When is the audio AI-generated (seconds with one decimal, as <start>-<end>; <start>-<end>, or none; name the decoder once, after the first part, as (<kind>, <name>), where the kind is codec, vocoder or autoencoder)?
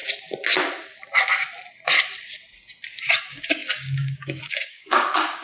3.2-5.4 (codec, DAC)